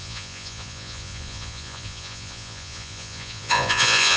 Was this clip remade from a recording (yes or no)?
yes